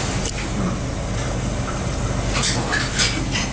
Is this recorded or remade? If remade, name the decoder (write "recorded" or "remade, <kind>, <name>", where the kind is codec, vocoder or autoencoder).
recorded